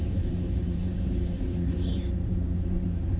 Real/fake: fake